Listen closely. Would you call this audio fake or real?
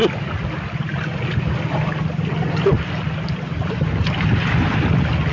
real